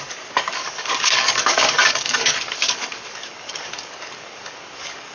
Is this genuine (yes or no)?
no